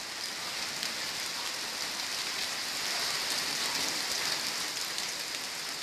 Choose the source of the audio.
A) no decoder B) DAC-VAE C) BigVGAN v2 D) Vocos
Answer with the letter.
A